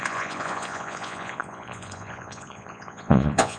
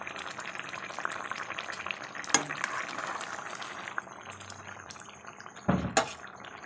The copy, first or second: first